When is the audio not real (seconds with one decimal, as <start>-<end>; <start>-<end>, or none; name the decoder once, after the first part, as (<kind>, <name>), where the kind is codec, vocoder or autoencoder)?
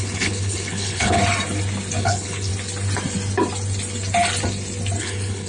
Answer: 0.0-1.2 (codec, HILCodec); 2.0-2.5; 5.0-5.5